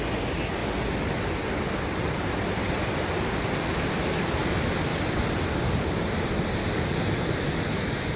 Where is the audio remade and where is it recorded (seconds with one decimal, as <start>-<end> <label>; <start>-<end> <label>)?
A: 0.0-8.2 recorded